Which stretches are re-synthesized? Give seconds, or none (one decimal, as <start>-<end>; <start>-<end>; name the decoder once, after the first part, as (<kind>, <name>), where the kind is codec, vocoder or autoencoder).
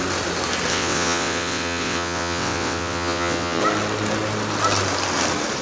0.7-3.6 (vocoder, WaveNeXt)